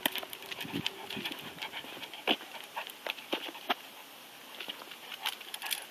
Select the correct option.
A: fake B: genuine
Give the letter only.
B